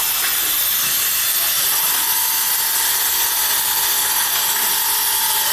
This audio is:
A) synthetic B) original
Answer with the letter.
B